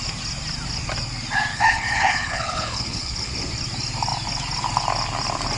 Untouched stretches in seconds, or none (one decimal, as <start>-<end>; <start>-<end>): 0.0-1.5; 3.3-5.6